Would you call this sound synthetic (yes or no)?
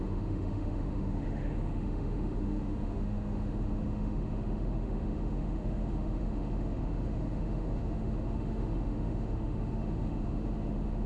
yes